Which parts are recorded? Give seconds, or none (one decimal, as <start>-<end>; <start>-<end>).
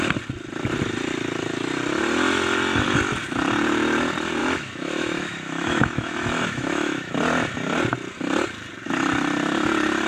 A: 0.0-4.4; 7.1-10.1